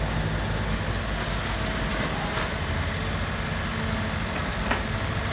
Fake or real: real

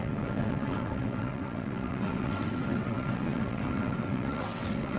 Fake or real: fake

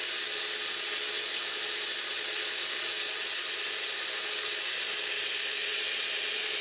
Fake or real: real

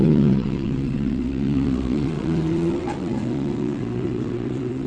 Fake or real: fake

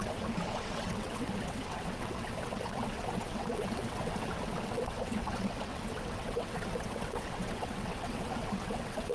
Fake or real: fake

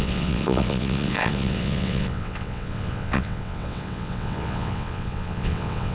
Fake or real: fake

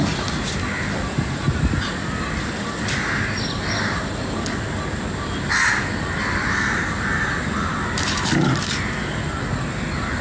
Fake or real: real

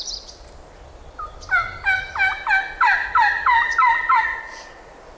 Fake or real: real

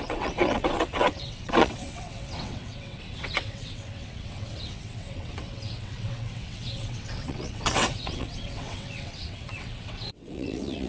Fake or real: fake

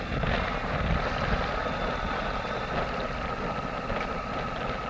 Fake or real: real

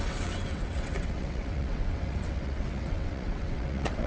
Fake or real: fake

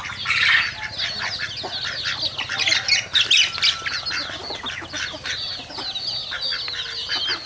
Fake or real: real